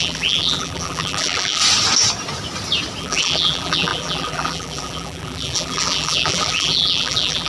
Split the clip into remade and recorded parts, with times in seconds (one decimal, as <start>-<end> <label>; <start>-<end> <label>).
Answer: 0.0-1.6 remade; 1.6-3.0 recorded; 3.0-7.5 remade